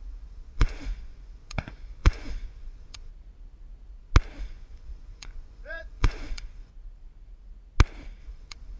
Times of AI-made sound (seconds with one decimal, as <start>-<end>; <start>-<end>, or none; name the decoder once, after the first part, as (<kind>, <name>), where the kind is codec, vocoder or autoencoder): 0.0-3.1 (vocoder, Vocos); 4.4-6.7; 8.2-8.8